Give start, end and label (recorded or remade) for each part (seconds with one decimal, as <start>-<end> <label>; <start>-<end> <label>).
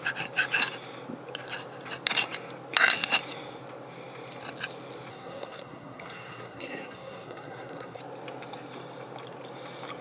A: 0.0-5.1 recorded; 5.1-8.0 remade; 8.0-10.0 recorded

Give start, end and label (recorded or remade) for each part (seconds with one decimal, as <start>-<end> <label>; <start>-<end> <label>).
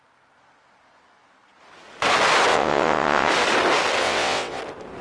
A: 0.0-2.5 recorded; 2.5-3.3 remade; 3.3-4.0 recorded; 4.0-4.6 remade; 4.6-5.0 recorded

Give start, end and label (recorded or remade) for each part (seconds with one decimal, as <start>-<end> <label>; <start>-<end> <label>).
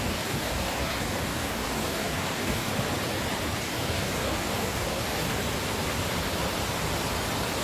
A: 0.0-2.7 remade; 2.7-3.6 recorded; 3.6-5.4 remade; 5.4-7.6 recorded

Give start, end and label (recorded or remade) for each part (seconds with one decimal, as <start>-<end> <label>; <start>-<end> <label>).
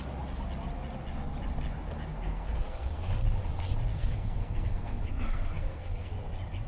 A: 0.0-2.1 recorded; 2.1-3.1 remade; 3.1-3.9 recorded; 3.9-6.1 remade; 6.1-6.7 recorded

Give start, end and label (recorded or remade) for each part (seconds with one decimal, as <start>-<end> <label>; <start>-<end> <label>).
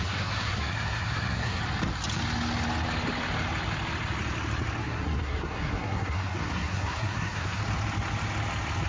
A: 0.0-1.6 remade; 1.6-4.8 recorded; 4.8-7.6 remade; 7.6-8.9 recorded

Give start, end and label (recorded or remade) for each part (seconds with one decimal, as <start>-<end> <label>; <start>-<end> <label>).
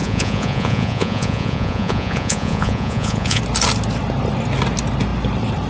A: 0.0-3.4 remade; 3.4-5.7 recorded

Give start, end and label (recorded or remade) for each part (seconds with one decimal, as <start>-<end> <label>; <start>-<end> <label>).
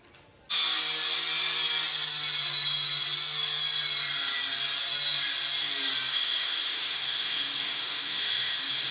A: 0.0-6.1 recorded; 6.1-8.9 remade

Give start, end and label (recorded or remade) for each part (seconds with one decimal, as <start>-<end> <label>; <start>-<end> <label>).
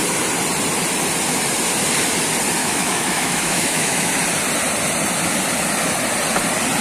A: 0.0-2.6 recorded; 2.6-4.1 remade; 4.1-6.8 recorded